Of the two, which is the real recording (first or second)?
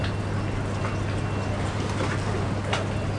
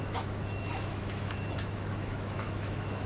first